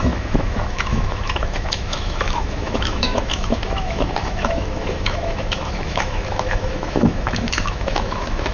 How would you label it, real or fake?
fake